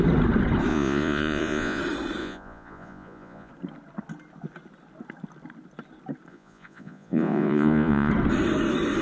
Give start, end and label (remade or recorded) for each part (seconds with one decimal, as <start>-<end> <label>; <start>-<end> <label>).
0.0-0.7 recorded; 0.7-1.8 remade; 1.8-2.2 recorded; 2.2-3.5 remade; 3.5-6.3 recorded; 6.3-8.1 remade; 8.1-9.0 recorded